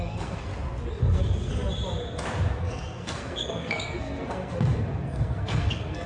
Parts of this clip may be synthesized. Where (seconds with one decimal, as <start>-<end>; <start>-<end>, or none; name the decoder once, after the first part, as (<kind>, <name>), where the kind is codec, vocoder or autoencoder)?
0.0-0.5 (codec, SNAC); 1.0-1.5; 2.6-6.1